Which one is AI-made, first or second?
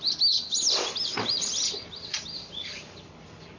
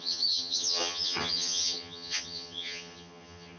second